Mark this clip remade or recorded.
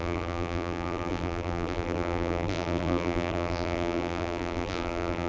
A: remade